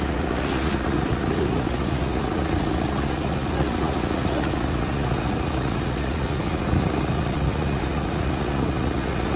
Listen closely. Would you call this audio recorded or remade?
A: remade